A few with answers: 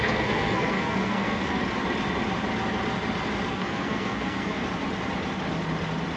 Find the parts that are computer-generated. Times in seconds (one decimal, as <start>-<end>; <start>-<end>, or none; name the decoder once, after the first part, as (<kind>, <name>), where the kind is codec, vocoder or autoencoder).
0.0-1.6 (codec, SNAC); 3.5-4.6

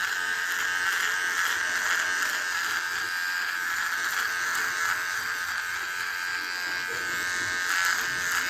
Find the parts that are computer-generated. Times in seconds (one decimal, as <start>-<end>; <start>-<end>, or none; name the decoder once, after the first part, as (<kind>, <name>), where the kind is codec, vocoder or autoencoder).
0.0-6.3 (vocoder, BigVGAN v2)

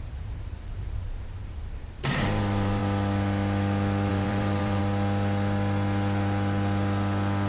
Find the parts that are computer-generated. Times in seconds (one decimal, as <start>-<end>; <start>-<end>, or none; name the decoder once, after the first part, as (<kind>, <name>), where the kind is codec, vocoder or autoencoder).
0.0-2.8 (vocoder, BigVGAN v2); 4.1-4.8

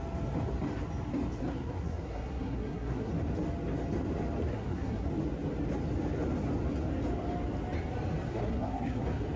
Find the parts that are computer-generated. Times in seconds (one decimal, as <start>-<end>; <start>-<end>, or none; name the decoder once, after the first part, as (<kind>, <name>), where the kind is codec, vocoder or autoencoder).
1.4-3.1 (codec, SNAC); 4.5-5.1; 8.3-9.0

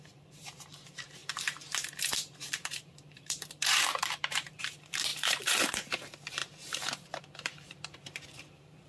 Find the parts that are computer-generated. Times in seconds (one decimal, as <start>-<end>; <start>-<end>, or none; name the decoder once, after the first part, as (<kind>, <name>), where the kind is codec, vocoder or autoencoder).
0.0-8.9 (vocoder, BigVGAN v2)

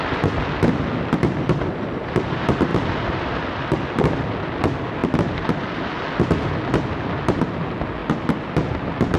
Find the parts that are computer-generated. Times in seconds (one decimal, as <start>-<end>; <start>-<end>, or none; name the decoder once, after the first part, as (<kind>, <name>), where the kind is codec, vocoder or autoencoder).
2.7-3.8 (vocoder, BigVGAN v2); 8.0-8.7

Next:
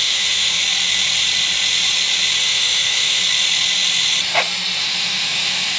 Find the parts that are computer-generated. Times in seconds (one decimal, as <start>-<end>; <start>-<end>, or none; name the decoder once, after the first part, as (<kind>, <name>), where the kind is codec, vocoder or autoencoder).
0.0-0.6 (autoencoder, DAC-VAE); 2.4-3.2; 4.8-5.8